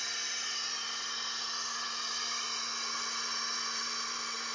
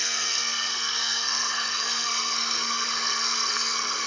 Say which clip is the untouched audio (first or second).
first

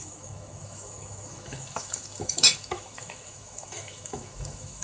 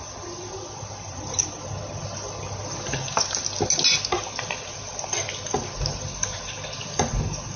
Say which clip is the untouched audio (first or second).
second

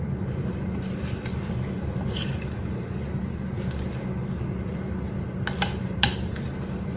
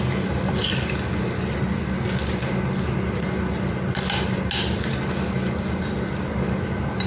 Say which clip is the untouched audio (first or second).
second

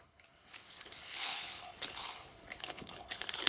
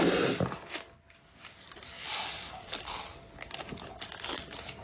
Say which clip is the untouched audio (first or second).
second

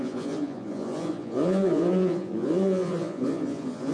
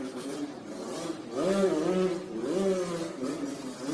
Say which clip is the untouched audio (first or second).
second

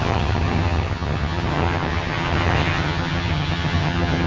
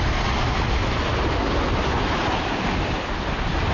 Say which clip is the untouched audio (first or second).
second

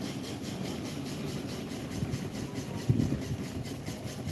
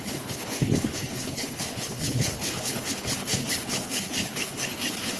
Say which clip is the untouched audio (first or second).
first